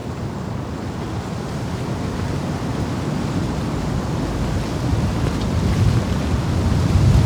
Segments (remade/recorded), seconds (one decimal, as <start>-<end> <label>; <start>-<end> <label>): 0.0-0.5 remade; 0.5-7.3 recorded